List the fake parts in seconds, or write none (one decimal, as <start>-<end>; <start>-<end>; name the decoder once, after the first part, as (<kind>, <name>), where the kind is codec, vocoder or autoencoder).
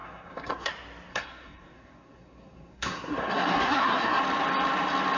0.0-0.7 (codec, SNAC); 1.1-4.2